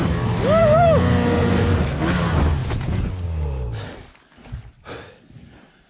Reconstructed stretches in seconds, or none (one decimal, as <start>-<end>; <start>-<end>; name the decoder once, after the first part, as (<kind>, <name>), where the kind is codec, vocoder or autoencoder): 2.6-3.1 (vocoder, Vocos)